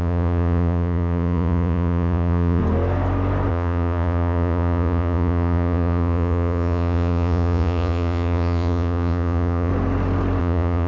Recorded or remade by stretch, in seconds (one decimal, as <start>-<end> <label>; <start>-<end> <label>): 0.0-2.6 remade; 2.6-3.5 recorded; 3.5-9.7 remade; 9.7-10.4 recorded; 10.4-10.9 remade